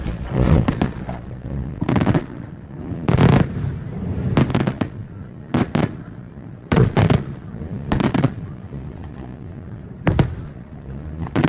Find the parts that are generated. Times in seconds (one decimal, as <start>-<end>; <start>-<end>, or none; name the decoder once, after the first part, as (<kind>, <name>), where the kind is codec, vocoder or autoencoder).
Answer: 0.0-3.2 (vocoder, Vocos); 4.5-9.8; 10.4-11.5